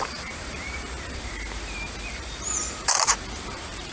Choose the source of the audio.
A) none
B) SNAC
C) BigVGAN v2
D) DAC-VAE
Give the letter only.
C